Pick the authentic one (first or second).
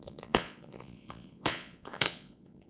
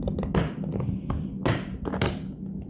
second